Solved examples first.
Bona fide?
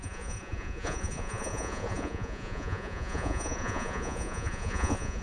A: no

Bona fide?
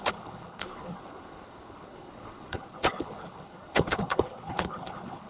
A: no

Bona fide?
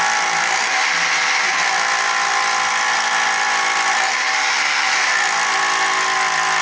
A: yes